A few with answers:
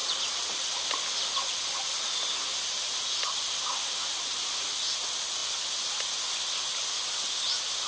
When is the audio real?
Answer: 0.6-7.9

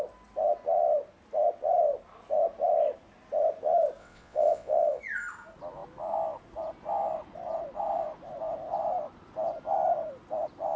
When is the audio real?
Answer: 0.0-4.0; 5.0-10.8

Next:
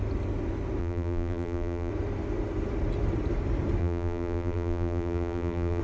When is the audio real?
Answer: 0.0-0.8; 1.9-3.8

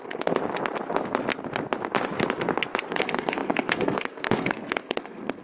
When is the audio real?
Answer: 0.4-2.9

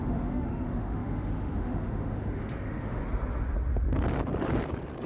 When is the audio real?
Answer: 3.0-5.1

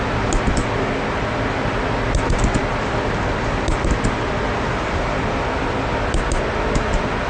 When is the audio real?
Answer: 0.0-7.3